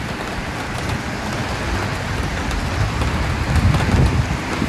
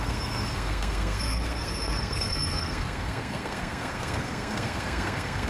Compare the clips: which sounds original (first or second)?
first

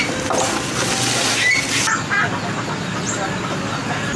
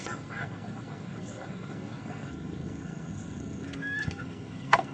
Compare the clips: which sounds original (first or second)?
first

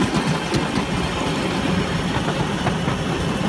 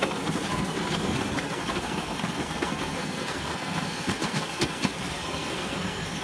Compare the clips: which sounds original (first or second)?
first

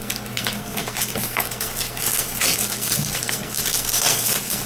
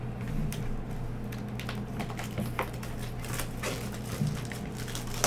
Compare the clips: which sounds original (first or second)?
second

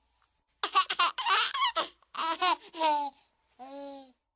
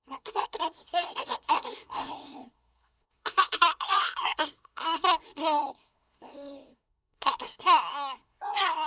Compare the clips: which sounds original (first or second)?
first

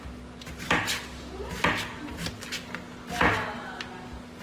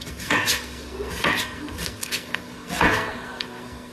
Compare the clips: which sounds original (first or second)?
first